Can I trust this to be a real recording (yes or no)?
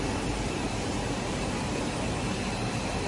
no